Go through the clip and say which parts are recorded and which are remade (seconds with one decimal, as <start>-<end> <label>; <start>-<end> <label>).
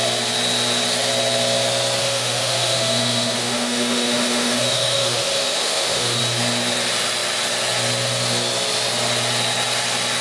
0.0-2.0 recorded; 2.0-6.2 remade; 6.2-10.2 recorded